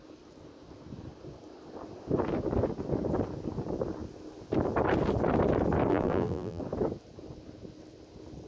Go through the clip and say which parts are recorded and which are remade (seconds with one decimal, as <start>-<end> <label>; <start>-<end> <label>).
0.0-5.9 recorded; 5.9-6.6 remade; 6.6-8.5 recorded